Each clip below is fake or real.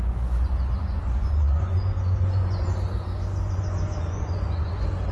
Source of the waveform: fake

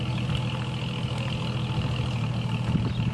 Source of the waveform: real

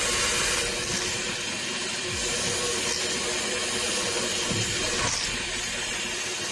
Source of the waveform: real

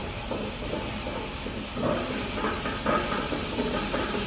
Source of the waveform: real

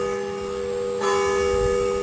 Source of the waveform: real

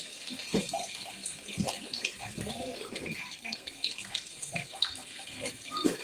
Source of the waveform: fake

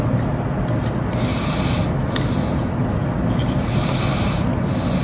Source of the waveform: real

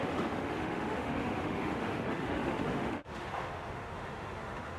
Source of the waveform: fake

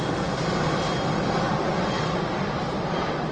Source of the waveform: real